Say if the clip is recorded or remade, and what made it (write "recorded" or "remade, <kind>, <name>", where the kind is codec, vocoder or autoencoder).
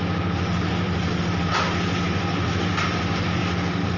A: recorded